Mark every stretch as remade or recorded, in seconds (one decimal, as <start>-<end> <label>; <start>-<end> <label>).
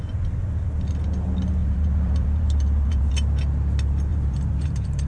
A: 0.0-1.6 recorded; 1.6-3.1 remade; 3.1-4.1 recorded; 4.1-5.1 remade